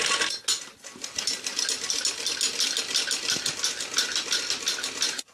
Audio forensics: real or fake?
real